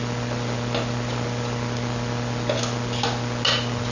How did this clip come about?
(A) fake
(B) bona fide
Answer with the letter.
B